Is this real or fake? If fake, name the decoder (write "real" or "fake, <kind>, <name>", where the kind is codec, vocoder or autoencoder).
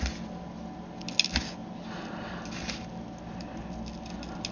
real